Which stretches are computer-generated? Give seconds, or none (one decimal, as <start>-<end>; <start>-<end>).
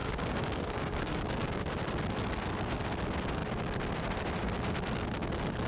0.0-1.6